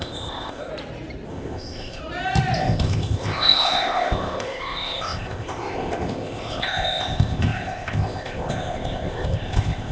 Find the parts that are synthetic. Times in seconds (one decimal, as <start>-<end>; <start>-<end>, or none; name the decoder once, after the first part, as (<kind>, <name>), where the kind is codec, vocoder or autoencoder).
0.0-0.7 (codec, ZipCodec); 1.3-2.0; 2.6-9.9